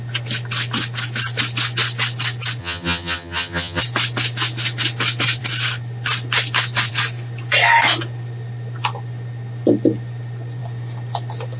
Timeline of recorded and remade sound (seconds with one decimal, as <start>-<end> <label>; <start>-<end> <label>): 0.0-2.6 recorded; 2.6-3.8 remade; 3.8-11.6 recorded